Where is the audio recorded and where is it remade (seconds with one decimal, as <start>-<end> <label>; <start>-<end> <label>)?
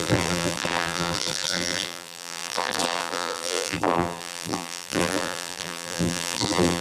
0.0-6.8 remade